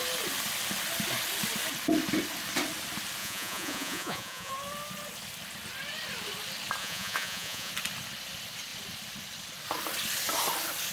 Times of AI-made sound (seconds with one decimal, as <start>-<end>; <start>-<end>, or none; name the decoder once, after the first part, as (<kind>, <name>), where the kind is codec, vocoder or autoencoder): 3.2-4.5 (vocoder, Vocos); 6.8-7.7